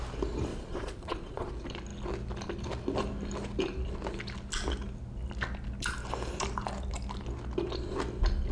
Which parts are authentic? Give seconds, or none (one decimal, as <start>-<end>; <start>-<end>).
0.0-0.5; 1.5-8.5